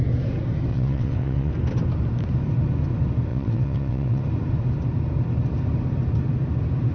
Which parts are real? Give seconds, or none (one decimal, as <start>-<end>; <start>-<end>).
0.0-0.7; 1.5-3.3; 4.2-6.9